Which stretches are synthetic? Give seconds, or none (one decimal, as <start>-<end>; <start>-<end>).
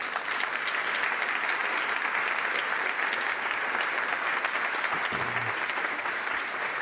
none